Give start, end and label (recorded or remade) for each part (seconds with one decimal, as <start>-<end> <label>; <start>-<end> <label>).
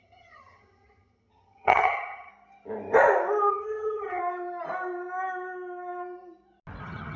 0.0-2.3 remade; 2.3-3.5 recorded; 3.5-4.2 remade; 4.2-6.8 recorded; 6.8-7.2 remade